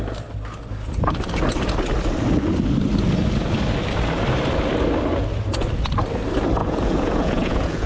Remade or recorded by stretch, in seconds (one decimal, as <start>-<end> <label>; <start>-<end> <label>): 0.0-6.6 recorded; 6.6-7.9 remade